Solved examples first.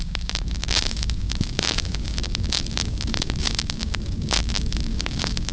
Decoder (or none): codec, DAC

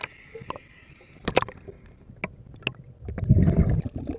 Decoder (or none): none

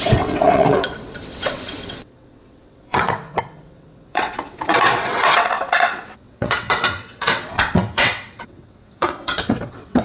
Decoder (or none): vocoder, WaveNeXt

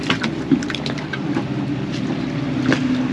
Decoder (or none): none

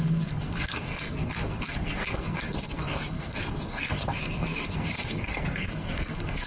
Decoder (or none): codec, SNAC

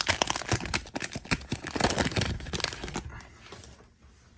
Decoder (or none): none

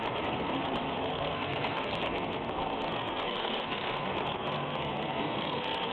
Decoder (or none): codec, SNAC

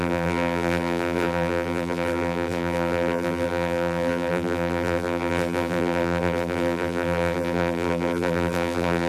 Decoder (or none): vocoder, BigVGAN v2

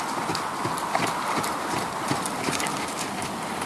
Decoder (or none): none